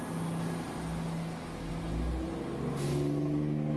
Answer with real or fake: real